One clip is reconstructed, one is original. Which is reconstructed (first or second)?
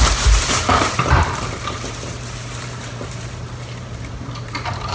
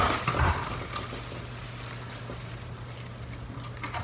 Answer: first